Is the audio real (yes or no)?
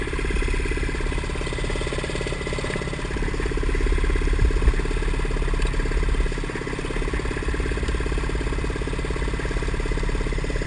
yes